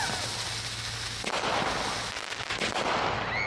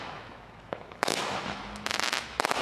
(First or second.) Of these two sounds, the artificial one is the second